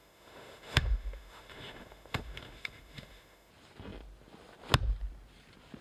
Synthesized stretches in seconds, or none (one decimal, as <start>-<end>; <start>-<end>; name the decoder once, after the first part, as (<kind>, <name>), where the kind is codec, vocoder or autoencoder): 0.0-3.5 (autoencoder, DAC-VAE)